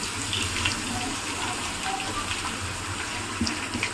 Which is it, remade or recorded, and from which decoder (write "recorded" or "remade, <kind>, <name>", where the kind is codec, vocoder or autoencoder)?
recorded